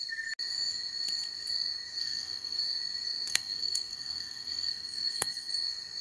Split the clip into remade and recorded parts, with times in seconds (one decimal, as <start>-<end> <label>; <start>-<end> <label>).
0.0-2.0 recorded; 2.0-2.6 remade; 2.6-3.3 recorded; 3.3-5.5 remade; 5.5-6.0 recorded